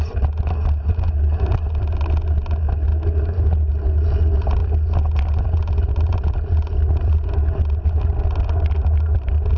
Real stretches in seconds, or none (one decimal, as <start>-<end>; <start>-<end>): 0.0-9.6